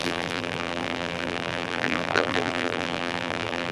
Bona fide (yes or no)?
no